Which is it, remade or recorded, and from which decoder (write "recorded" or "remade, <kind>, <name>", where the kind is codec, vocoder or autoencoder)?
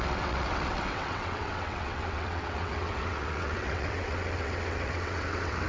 remade, vocoder, WaveNeXt